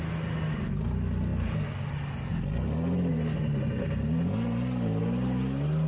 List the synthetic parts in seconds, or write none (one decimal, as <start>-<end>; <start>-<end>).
none